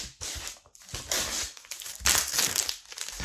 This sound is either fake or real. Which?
real